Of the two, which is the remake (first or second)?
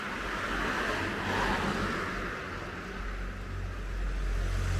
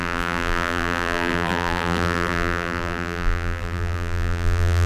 second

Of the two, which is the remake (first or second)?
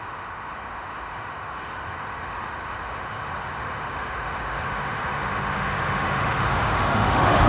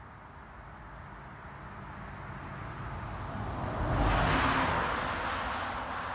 first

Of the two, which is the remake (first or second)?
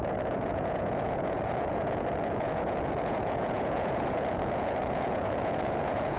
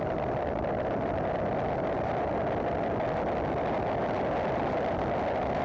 first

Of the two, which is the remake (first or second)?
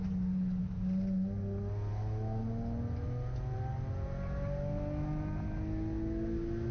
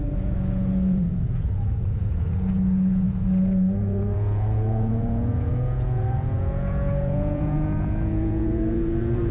second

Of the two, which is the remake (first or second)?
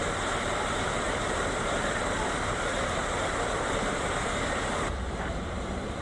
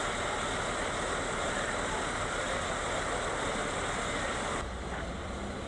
first